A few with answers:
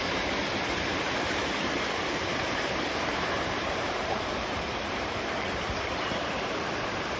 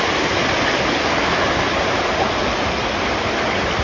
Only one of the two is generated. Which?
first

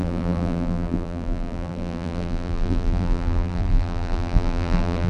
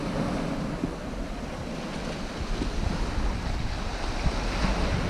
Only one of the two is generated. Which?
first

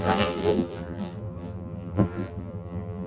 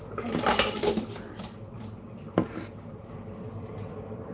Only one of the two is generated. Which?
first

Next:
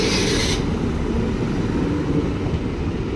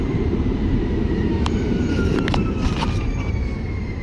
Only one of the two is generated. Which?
second